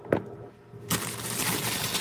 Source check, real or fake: real